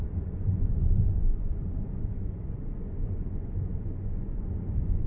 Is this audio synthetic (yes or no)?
yes